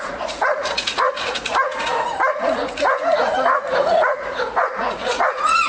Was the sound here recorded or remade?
remade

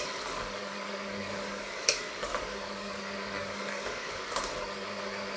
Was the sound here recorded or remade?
remade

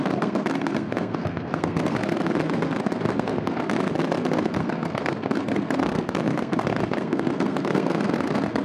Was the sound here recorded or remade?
remade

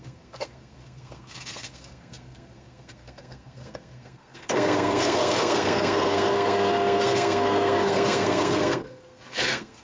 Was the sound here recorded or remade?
remade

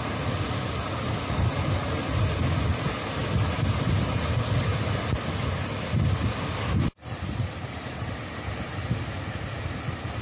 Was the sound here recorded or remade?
recorded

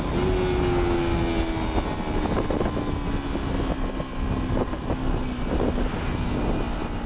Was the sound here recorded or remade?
recorded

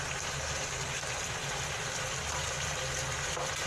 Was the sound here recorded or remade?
recorded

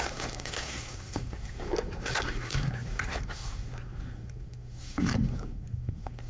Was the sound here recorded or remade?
remade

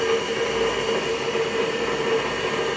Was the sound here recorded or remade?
recorded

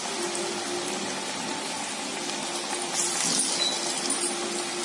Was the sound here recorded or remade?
recorded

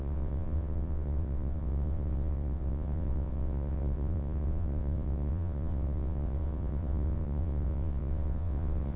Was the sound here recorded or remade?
remade